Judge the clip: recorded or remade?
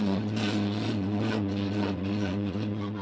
remade